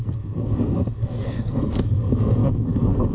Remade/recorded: remade